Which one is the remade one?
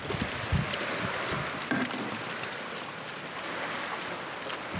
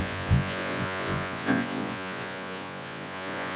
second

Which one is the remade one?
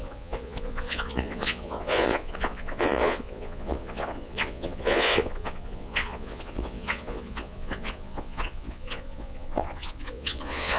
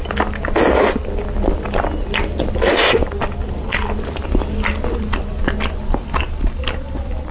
first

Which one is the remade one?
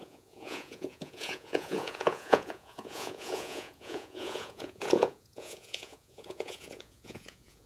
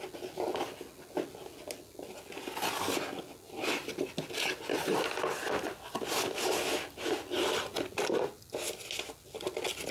first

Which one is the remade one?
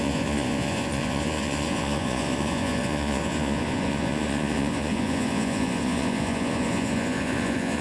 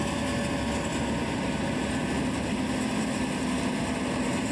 first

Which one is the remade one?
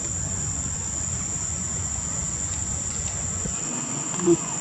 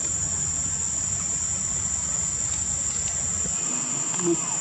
first